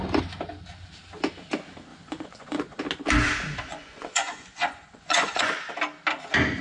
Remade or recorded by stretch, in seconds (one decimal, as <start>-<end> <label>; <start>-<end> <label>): 0.0-1.9 recorded; 1.9-2.8 remade; 2.8-3.7 recorded; 3.7-5.7 remade; 5.7-6.6 recorded